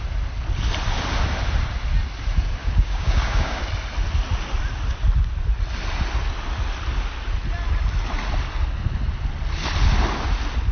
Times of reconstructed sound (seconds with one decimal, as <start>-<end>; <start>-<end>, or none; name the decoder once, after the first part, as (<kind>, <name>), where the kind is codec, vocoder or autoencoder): 2.6-3.6 (codec, DAC)